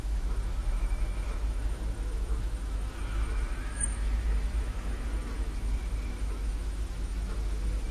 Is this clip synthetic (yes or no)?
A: yes